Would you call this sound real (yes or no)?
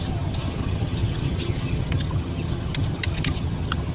no